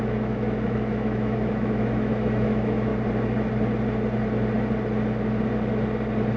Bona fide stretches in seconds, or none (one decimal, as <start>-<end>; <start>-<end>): 2.9-6.4

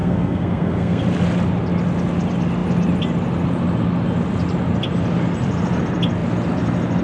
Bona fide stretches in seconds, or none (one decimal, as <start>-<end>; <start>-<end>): 1.0-7.0